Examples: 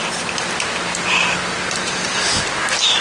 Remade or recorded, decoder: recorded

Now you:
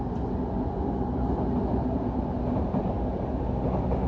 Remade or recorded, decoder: recorded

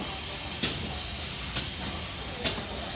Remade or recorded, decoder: recorded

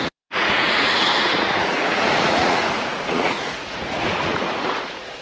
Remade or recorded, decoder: remade, vocoder, Vocos